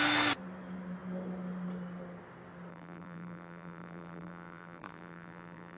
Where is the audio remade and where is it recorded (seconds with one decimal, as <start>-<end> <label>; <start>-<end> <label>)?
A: 0.0-2.7 recorded; 2.7-5.8 remade